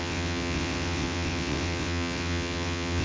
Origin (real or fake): fake